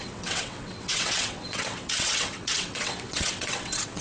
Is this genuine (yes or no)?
no